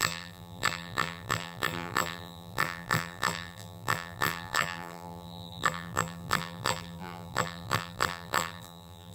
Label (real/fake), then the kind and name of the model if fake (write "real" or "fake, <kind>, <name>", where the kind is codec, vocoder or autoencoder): fake, vocoder, BigVGAN v2